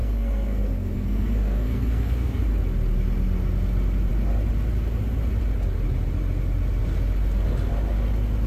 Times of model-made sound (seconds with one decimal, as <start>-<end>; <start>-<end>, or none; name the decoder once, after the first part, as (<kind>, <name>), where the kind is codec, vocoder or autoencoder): 0.0-2.4 (codec, SNAC)